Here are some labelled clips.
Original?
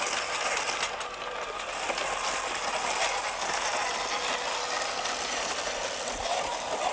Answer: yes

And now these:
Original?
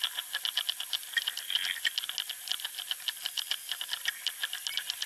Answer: yes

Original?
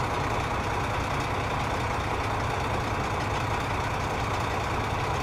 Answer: yes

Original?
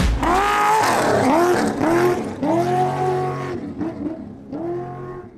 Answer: yes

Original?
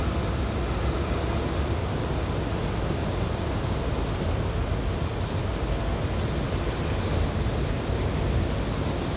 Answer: yes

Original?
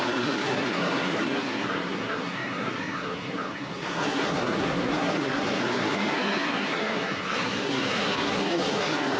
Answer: no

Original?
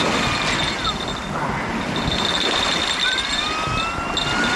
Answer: yes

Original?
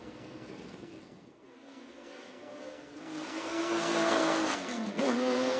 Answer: no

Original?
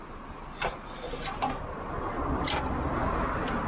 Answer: yes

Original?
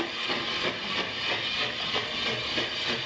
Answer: yes